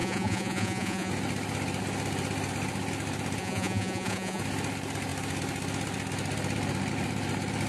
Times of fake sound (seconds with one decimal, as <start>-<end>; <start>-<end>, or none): 0.0-1.1; 3.4-4.4